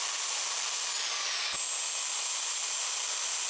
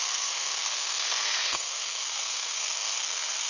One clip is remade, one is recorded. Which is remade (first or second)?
second